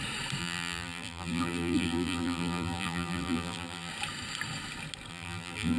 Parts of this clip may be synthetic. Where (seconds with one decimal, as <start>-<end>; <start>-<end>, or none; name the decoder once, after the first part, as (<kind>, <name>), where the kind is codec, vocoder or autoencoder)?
0.4-3.9 (vocoder, BigVGAN v2); 5.1-5.8